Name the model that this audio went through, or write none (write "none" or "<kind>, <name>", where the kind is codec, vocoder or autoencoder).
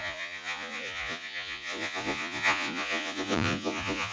vocoder, Vocos